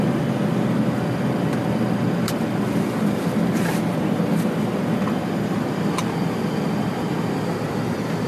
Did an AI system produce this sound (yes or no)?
no